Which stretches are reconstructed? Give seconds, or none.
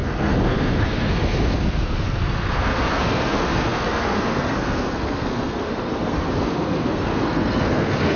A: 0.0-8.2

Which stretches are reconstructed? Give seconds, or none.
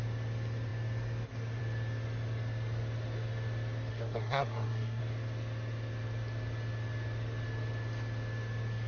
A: 3.9-5.0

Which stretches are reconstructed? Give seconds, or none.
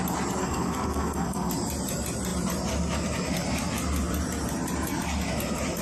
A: 0.4-1.5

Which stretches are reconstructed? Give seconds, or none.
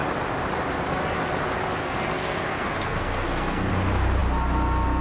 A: 1.8-3.7